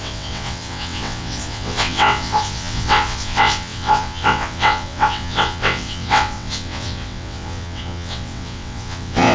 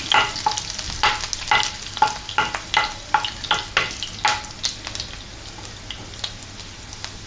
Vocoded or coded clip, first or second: first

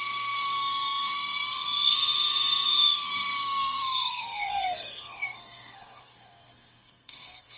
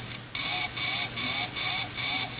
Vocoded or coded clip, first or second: first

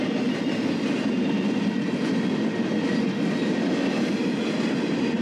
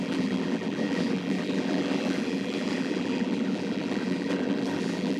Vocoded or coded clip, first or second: second